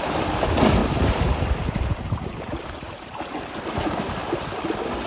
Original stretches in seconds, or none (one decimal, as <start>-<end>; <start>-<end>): 0.0-0.8; 3.6-5.1

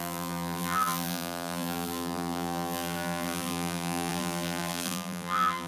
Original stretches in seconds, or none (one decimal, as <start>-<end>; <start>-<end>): none

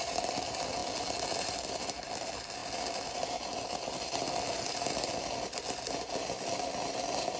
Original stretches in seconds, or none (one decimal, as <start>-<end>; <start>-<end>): 0.8-1.6

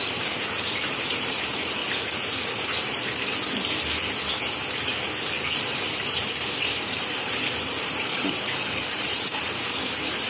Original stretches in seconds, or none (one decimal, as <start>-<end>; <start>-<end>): 1.8-5.8; 9.8-10.3